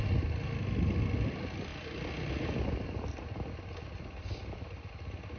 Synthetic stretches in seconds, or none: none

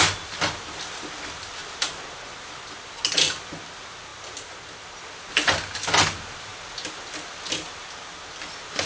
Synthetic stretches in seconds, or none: none

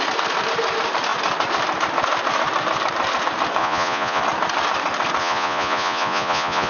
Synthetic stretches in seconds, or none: 3.6-4.2 (vocoder, Vocos); 5.2-6.7

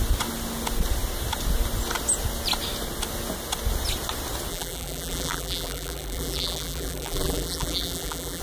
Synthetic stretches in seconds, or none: 4.5-8.4 (vocoder, BigVGAN v2)

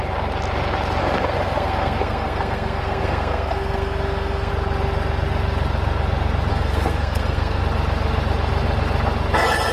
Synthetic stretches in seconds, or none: 1.0-4.5 (codec, SNAC); 6.5-7.6

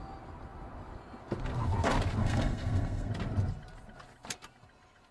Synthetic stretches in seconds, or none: 2.2-3.1 (codec, SNAC)

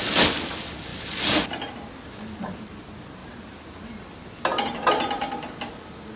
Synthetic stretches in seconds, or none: none